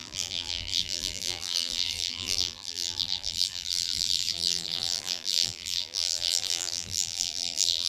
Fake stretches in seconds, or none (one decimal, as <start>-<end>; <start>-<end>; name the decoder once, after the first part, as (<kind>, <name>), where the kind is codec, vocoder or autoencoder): 0.0-7.9 (vocoder, BigVGAN v2)